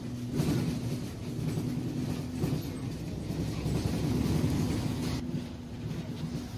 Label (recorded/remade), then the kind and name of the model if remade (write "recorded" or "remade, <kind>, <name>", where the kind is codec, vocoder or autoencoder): recorded